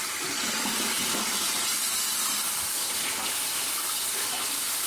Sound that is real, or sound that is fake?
real